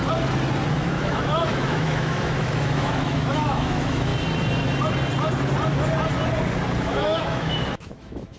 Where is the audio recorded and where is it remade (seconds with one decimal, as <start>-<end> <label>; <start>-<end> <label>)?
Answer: 0.0-0.7 recorded; 0.7-4.1 remade; 4.1-6.8 recorded; 6.8-8.4 remade